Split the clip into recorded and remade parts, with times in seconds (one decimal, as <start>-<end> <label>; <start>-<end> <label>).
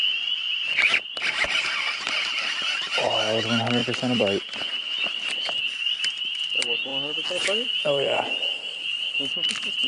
0.0-3.8 recorded; 3.8-6.2 remade; 6.2-6.9 recorded; 6.9-9.5 remade; 9.5-9.9 recorded